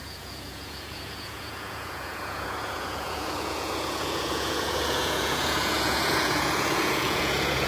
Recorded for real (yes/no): no